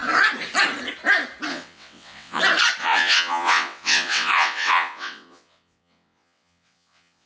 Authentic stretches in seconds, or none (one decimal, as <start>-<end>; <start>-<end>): 0.0-1.5; 2.4-2.8